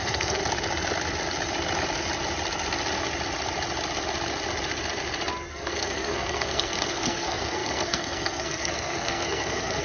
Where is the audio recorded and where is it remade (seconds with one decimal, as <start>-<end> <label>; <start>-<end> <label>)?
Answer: 0.0-0.4 remade; 0.4-5.5 recorded; 5.5-9.8 remade